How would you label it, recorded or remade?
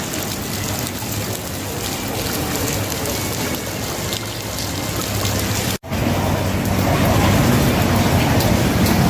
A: recorded